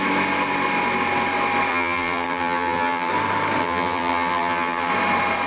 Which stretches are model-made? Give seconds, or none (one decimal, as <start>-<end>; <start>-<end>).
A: 1.7-3.1; 3.6-4.9